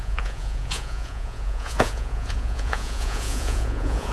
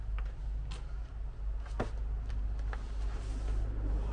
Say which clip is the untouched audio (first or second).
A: second